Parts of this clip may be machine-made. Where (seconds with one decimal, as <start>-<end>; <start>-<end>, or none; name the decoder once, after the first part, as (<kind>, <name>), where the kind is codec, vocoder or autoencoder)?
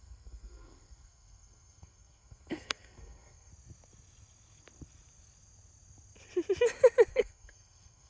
0.0-3.5 (codec, SNAC); 7.1-8.1